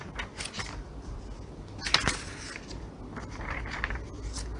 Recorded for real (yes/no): yes